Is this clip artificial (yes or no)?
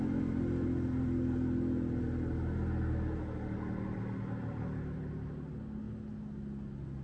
no